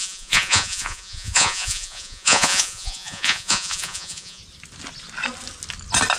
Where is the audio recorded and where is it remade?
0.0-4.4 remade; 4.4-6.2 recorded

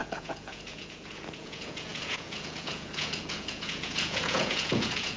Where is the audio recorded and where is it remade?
0.0-5.2 remade

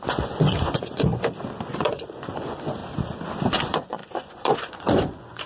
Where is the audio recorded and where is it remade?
0.0-1.1 remade; 1.1-1.7 recorded; 1.7-2.8 remade; 2.8-3.5 recorded; 3.5-5.5 remade